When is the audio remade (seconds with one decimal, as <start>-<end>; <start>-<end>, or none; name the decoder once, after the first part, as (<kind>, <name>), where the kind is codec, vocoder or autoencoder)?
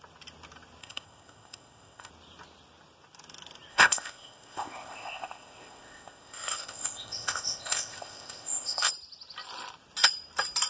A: 0.8-2.1 (codec, ZipCodec); 3.7-8.9